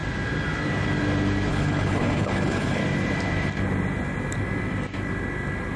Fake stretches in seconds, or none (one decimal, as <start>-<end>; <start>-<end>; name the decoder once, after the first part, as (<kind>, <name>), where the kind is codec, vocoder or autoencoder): 1.5-2.8 (codec, HILCodec)